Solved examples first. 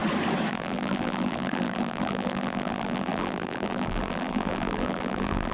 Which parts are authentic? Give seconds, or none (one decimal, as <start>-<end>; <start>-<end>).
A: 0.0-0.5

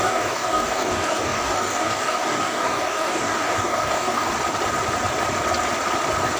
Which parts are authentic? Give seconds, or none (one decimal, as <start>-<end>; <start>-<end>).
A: 4.3-6.4

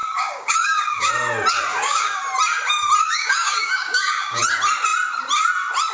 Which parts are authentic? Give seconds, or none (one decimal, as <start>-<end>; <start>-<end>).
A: 1.1-1.7; 2.2-3.0; 4.4-5.9

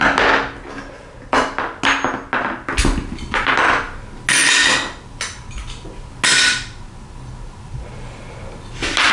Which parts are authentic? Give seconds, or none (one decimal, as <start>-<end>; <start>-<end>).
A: 0.0-9.1

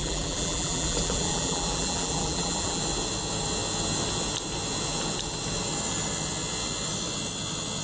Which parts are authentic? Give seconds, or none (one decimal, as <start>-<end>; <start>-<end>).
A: 2.8-7.8